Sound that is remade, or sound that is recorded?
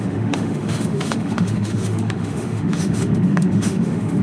remade